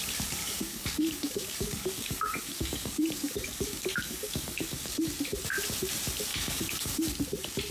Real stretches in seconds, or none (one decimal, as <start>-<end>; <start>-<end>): 0.0-0.4; 5.0-6.3; 7.0-7.7